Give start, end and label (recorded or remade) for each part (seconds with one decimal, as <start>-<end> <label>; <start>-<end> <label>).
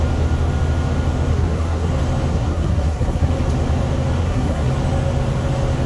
0.0-1.3 recorded; 1.3-1.9 remade; 1.9-2.3 recorded; 2.3-3.3 remade; 3.3-4.2 recorded; 4.2-4.7 remade; 4.7-5.9 recorded